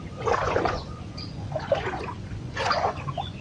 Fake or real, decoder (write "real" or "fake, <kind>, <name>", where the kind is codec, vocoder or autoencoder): fake, vocoder, Vocos